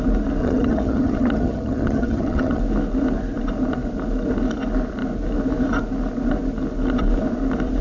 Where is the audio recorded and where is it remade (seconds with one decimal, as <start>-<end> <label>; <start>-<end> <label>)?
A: 0.0-0.4 recorded; 0.4-2.6 remade; 2.6-7.8 recorded